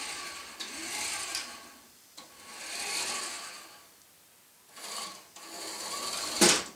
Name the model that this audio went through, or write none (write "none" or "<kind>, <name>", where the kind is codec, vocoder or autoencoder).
none